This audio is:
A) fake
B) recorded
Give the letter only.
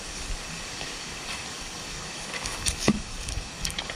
A